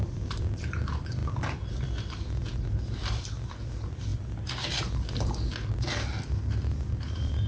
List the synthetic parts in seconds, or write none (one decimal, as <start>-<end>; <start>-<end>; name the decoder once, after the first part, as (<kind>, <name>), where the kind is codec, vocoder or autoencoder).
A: none